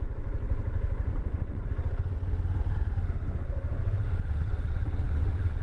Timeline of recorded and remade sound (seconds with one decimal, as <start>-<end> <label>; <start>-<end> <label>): 0.0-1.1 recorded; 1.1-1.7 remade; 1.7-3.8 recorded; 3.8-5.6 remade